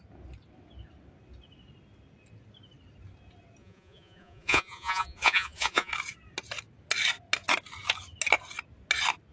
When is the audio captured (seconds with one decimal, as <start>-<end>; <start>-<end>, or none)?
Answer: 0.0-3.6; 5.9-9.3